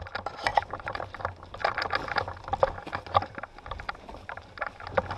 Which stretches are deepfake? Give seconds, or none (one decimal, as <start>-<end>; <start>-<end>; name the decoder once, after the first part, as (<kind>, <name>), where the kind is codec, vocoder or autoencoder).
0.5-1.2 (vocoder, BigVGAN v2)